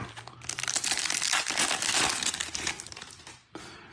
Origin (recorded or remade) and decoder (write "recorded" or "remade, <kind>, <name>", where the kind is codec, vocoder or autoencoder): recorded